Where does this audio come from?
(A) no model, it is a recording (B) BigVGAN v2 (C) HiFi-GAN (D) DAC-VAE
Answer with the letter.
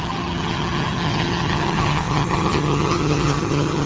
C